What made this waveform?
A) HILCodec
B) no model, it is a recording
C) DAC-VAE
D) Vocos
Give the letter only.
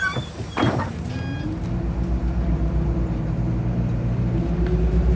B